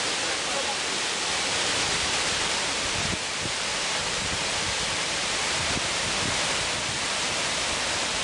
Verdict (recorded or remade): recorded